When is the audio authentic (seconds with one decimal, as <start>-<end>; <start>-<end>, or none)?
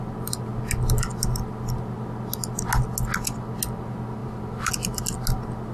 0.0-4.2; 4.7-5.7